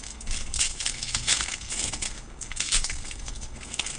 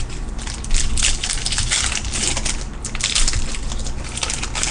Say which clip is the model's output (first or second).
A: first